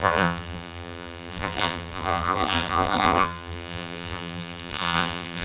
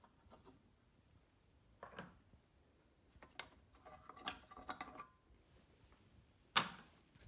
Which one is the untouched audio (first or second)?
second